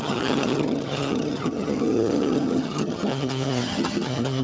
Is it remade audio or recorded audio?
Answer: remade